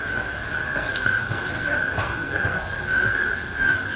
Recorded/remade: remade